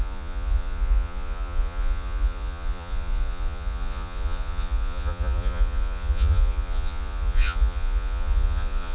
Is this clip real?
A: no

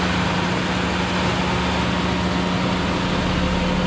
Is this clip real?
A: yes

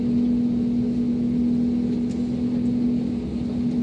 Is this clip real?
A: yes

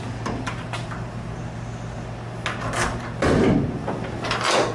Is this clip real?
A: yes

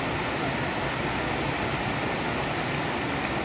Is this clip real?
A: yes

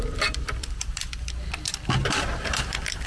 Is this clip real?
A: no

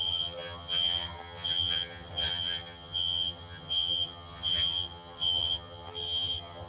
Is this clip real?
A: no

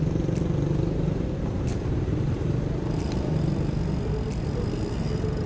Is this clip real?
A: yes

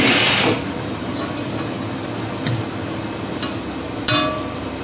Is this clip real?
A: yes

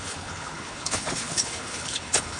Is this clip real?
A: no